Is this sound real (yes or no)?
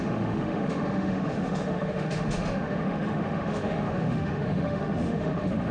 no